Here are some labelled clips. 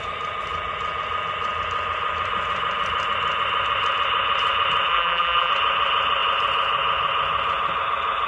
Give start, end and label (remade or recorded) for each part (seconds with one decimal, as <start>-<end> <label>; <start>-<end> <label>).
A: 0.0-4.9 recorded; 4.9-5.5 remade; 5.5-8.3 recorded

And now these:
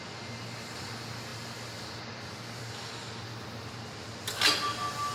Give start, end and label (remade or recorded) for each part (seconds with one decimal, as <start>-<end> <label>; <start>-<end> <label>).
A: 0.0-5.1 recorded

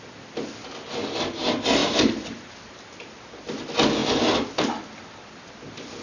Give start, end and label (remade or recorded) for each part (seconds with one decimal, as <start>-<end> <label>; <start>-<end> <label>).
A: 0.0-1.8 recorded; 1.8-2.6 remade; 2.6-6.0 recorded

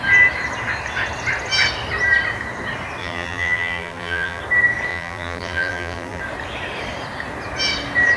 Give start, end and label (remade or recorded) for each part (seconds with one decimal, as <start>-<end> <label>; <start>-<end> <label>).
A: 0.0-3.0 recorded; 3.0-4.4 remade; 4.4-4.9 recorded; 4.9-6.2 remade; 6.2-8.2 recorded

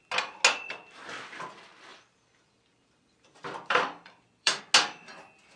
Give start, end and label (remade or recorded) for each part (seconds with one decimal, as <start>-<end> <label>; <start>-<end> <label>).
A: 0.0-1.9 recorded; 1.9-4.6 remade; 4.6-5.6 recorded

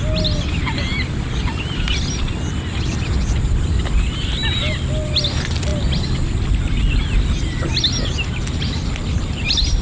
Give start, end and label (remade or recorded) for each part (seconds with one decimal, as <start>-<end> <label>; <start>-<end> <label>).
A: 0.0-9.8 recorded

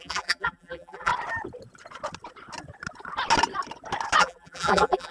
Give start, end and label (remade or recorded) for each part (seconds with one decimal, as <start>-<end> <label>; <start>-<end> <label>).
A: 0.0-1.1 remade; 1.1-4.2 recorded; 4.2-5.1 remade

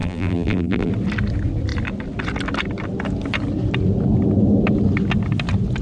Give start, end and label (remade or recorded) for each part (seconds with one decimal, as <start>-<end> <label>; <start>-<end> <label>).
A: 0.0-0.9 remade; 0.9-5.8 recorded